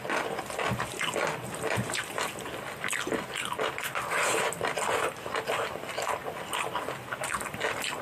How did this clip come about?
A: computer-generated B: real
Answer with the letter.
B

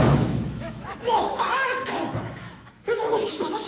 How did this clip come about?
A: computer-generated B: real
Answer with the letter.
A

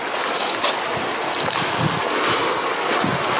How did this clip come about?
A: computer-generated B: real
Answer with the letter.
B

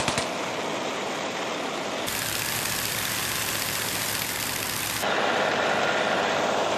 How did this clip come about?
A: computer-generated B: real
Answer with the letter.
A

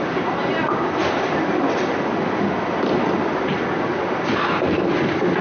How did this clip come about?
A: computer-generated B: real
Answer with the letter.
B